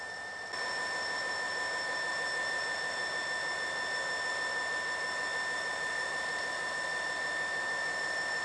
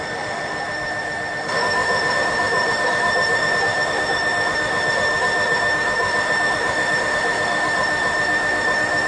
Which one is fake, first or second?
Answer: second